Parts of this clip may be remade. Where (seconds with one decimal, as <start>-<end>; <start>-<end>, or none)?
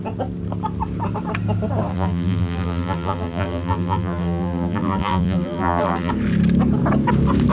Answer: 1.9-6.1